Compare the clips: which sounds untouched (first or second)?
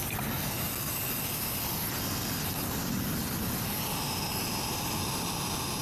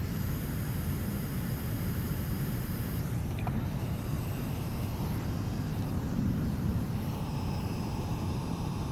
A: first